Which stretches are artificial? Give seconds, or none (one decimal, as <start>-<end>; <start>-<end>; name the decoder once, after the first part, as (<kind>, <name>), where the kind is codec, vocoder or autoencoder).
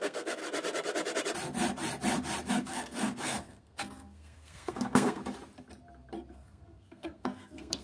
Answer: 0.0-0.4 (codec, SNAC); 2.5-5.2; 6.3-7.8